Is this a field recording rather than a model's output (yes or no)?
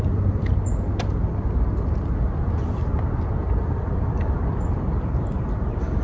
yes